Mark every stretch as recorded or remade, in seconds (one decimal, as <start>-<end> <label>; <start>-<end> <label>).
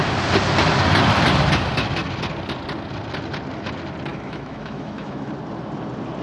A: 0.0-4.1 recorded; 4.1-5.3 remade; 5.3-6.2 recorded